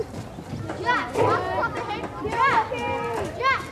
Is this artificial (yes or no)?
no